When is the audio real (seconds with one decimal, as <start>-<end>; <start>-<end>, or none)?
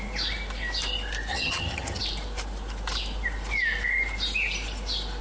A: 0.0-1.3; 2.0-5.2